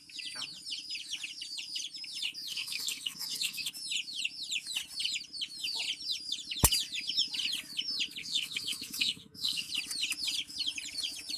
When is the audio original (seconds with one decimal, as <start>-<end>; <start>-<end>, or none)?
0.0-2.5; 3.7-8.2; 9.7-11.4